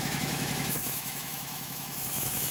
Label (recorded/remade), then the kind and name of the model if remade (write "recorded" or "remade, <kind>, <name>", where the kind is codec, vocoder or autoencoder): remade, autoencoder, DAC-VAE